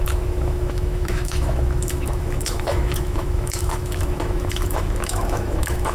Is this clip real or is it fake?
fake